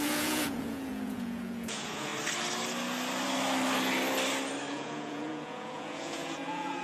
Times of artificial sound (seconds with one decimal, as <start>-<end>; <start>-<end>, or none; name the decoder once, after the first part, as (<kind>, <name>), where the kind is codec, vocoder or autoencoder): 0.0-2.1 (vocoder, Vocos); 4.7-6.8